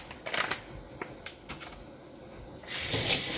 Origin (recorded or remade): recorded